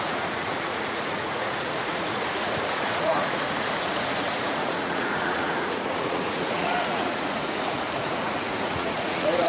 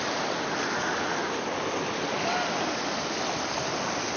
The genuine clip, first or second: second